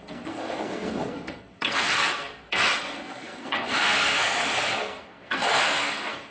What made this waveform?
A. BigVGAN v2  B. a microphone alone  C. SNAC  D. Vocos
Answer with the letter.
C